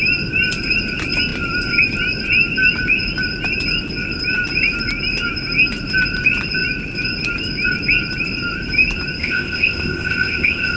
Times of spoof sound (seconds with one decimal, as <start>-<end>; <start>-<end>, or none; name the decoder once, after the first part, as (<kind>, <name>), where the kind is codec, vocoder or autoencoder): 9.2-10.8 (codec, ZipCodec)